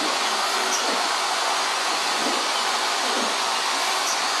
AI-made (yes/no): yes